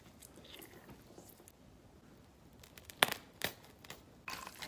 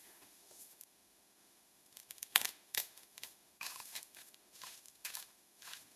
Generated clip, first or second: second